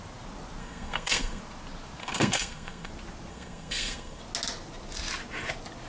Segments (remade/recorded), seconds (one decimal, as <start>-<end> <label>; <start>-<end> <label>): 0.0-0.6 recorded; 0.6-1.4 remade; 1.4-2.0 recorded; 2.0-2.9 remade; 2.9-3.3 recorded; 3.3-4.2 remade; 4.2-5.9 recorded